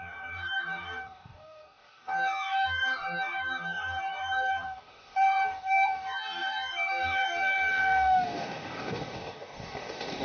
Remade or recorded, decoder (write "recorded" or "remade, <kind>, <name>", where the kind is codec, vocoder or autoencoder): remade, codec, DAC